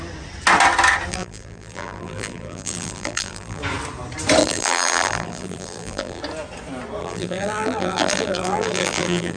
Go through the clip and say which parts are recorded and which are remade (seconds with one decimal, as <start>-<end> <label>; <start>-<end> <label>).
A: 0.0-1.1 recorded; 1.1-3.6 remade; 3.6-4.4 recorded; 4.4-6.2 remade; 6.2-7.0 recorded; 7.0-9.4 remade